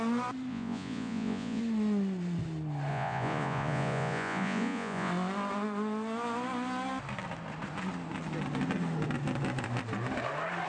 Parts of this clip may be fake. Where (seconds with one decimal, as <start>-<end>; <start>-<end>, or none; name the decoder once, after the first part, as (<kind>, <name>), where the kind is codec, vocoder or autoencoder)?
0.5-1.6 (vocoder, Vocos); 2.9-5.1